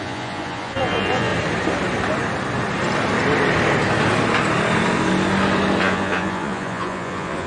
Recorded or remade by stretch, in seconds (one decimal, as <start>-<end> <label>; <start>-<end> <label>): 0.0-1.3 remade; 1.3-5.8 recorded; 5.8-7.5 remade